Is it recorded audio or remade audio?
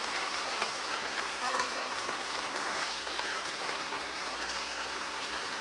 remade